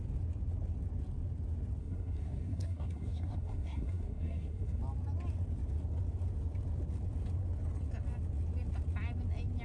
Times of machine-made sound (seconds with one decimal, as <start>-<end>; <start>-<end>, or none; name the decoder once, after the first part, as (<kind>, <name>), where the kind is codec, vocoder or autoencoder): 1.8-4.8 (codec, SNAC)